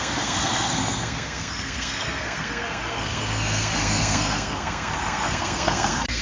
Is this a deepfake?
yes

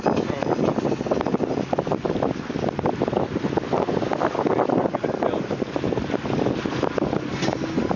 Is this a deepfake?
no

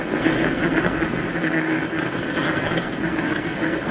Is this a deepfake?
yes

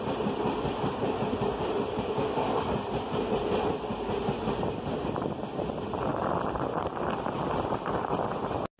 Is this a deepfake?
no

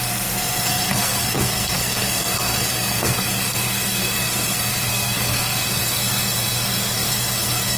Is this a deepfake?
yes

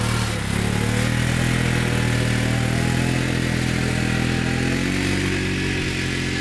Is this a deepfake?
no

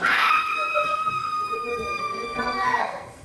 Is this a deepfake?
yes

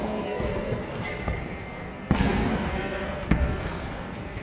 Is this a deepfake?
yes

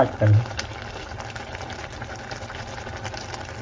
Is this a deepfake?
no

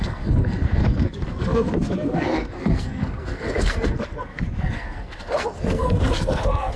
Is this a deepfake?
yes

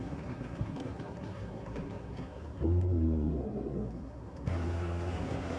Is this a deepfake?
yes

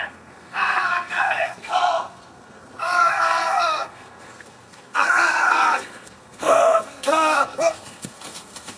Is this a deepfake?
yes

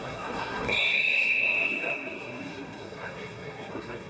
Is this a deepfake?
yes